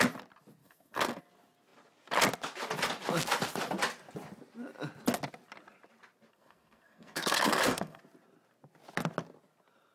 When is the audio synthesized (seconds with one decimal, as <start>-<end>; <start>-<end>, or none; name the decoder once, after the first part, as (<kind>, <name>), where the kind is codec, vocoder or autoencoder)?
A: 0.6-1.2 (codec, SNAC); 6.3-8.0